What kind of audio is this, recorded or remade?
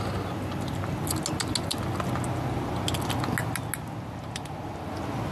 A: recorded